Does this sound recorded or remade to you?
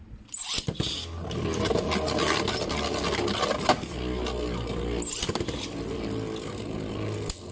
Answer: recorded